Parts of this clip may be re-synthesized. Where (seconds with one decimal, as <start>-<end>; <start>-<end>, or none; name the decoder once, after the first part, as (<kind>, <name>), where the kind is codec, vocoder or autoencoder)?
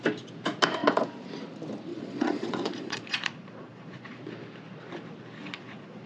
0.8-1.3 (vocoder, Vocos); 1.9-4.2; 5.4-6.1